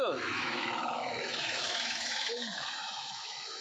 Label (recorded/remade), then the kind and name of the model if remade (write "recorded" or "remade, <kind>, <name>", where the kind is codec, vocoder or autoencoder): remade, autoencoder, DAC-VAE